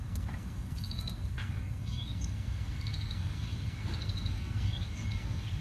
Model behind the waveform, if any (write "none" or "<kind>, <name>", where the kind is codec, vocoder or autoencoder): codec, SNAC